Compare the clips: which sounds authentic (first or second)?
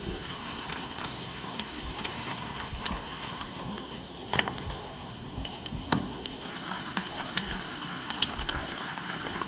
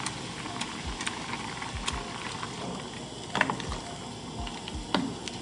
second